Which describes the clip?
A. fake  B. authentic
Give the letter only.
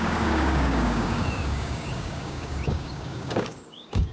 A